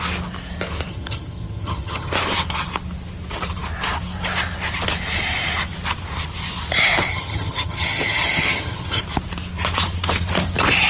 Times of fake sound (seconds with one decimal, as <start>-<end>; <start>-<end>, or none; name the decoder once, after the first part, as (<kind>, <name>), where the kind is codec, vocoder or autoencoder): 0.9-2.1 (vocoder, HiFi-GAN); 7.1-9.0